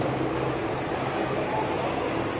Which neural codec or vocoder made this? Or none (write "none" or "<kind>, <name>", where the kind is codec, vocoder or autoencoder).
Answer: none